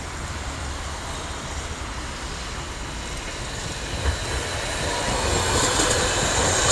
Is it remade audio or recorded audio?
recorded